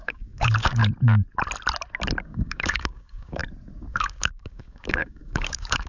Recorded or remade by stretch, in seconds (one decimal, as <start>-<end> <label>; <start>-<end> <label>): 0.0-0.8 remade; 0.8-2.2 recorded; 2.2-3.4 remade; 3.4-3.9 recorded; 3.9-5.9 remade

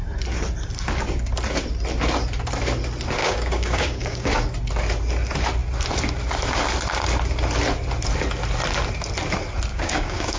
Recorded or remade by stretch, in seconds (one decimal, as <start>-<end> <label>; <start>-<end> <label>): 0.0-3.2 recorded; 3.2-4.3 remade; 4.3-9.7 recorded; 9.7-10.4 remade

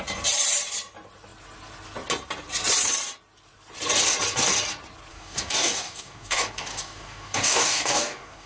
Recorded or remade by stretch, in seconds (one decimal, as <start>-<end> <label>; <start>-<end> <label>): 0.0-5.1 recorded; 5.1-8.5 remade

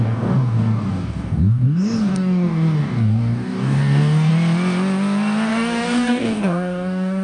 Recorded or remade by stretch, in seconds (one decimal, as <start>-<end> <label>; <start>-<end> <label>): 0.0-4.3 remade; 4.3-5.5 recorded; 5.5-7.2 remade